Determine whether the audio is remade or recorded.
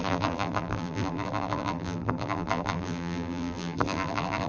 remade